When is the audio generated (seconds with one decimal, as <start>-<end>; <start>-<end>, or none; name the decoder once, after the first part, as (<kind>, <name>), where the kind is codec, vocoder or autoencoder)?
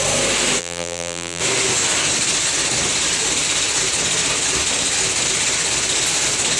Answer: 0.6-1.4 (vocoder, BigVGAN v2)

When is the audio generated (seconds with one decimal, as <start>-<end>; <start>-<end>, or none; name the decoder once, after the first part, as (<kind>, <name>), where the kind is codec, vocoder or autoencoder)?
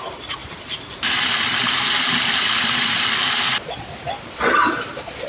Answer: none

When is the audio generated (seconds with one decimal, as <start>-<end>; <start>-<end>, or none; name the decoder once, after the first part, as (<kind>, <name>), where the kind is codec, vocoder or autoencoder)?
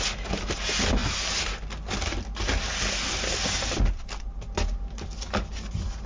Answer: none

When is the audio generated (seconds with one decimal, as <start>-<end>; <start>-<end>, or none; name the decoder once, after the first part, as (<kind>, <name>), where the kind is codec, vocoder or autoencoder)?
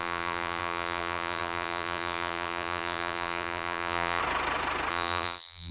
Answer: 0.0-4.2 (vocoder, BigVGAN v2); 4.9-5.7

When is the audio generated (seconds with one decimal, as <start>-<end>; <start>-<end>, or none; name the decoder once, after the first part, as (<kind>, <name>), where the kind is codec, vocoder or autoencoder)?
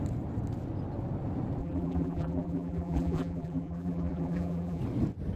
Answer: 1.6-4.8 (vocoder, BigVGAN v2)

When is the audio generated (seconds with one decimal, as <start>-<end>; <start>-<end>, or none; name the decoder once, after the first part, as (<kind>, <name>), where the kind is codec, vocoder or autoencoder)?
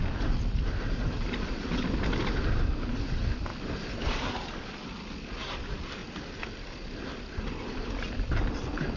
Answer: 3.5-4.3 (vocoder, BigVGAN v2); 6.0-7.9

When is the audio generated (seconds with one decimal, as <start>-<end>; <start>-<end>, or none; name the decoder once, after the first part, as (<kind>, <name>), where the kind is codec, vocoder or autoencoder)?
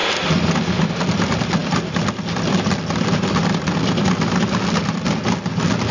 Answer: none